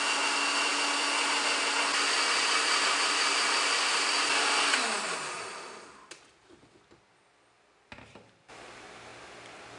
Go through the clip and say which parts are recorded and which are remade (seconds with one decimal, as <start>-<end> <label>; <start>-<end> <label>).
0.0-9.8 recorded